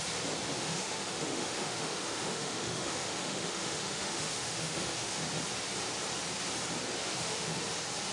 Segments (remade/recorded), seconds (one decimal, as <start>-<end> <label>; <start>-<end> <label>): 0.0-0.6 recorded; 0.6-5.2 remade; 5.2-7.0 recorded; 7.0-7.6 remade; 7.6-8.1 recorded